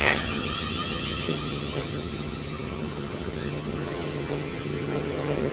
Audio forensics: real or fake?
fake